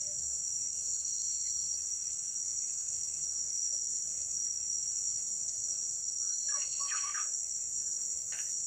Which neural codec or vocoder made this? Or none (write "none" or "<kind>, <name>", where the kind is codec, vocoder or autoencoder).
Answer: codec, SNAC